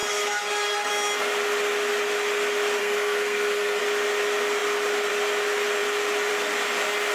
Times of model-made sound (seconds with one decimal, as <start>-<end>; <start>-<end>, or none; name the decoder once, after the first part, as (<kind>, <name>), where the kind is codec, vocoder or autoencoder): 0.0-0.9 (codec, SNAC); 2.8-3.8